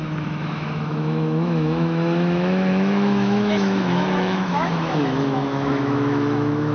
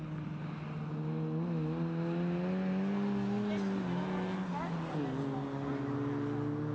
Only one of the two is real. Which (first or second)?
second